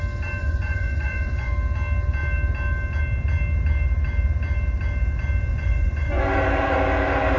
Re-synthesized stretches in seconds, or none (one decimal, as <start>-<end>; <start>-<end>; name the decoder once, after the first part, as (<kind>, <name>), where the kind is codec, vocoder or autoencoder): 0.4-1.5 (vocoder, Vocos); 5.5-6.2